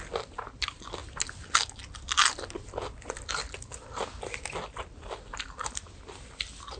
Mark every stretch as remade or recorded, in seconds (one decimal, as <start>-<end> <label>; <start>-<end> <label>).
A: 0.0-6.8 recorded